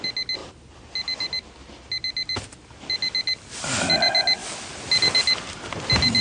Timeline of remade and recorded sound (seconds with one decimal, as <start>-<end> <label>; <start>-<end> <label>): 0.0-6.2 recorded